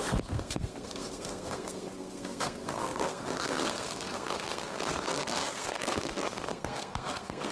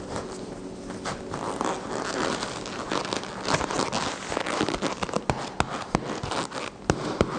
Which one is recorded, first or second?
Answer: second